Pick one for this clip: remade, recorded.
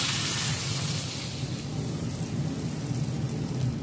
recorded